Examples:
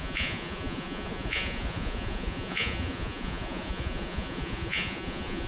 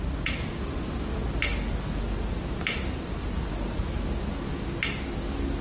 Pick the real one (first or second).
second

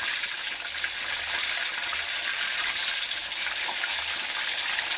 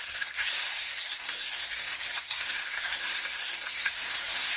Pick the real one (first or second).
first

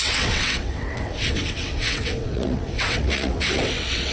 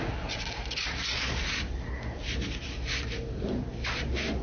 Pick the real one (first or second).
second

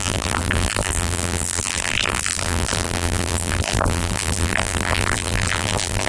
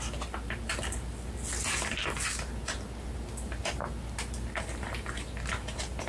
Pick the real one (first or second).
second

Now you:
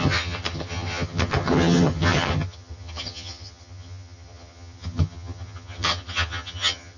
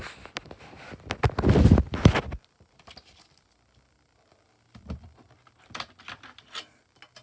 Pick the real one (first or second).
second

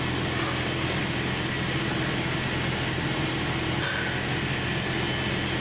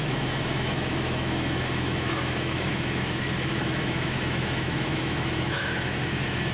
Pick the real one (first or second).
first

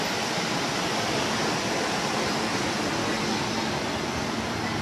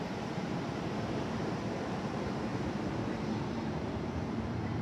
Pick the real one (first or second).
first